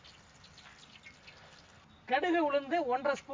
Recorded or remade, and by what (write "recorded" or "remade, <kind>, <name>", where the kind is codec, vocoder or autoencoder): recorded